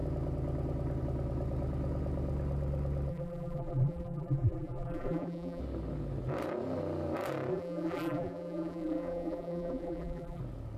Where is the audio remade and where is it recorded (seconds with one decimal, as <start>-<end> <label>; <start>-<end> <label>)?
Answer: 0.0-3.1 recorded; 3.1-5.6 remade; 5.6-7.5 recorded; 7.5-10.4 remade; 10.4-10.8 recorded